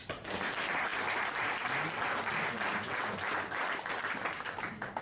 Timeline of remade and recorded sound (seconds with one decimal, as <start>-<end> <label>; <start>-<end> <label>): 0.0-5.0 recorded